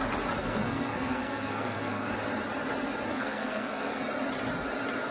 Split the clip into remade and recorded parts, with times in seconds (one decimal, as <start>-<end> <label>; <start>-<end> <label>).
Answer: 0.0-0.4 recorded; 0.4-2.1 remade; 2.1-3.1 recorded; 3.1-4.0 remade; 4.0-5.1 recorded